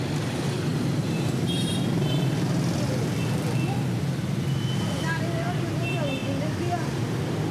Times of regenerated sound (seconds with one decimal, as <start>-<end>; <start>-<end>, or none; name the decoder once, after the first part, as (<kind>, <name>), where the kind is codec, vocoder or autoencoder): none

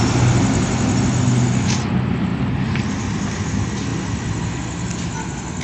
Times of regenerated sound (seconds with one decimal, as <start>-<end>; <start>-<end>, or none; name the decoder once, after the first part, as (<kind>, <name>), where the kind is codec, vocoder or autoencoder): 2.3-3.0 (vocoder, BigVGAN v2)

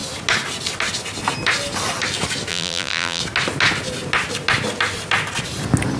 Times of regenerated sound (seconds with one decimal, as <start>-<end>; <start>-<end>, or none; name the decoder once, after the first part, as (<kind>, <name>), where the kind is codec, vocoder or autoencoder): 2.5-3.2 (vocoder, BigVGAN v2)

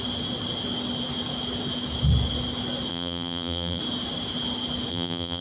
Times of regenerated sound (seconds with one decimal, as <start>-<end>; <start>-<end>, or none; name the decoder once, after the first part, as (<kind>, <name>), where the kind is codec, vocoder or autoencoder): 2.9-3.8 (vocoder, BigVGAN v2); 4.9-5.4